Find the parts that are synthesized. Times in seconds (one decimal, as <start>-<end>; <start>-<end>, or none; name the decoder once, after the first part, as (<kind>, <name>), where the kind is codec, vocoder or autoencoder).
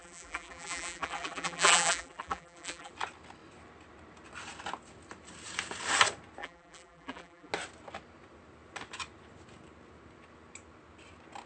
0.0-2.9 (vocoder, BigVGAN v2); 6.4-7.5